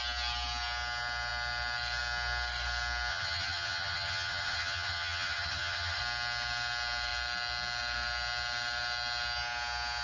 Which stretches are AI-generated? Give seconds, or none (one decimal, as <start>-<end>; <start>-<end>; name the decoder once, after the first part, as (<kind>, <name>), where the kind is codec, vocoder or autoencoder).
3.1-6.0 (vocoder, HiFi-GAN)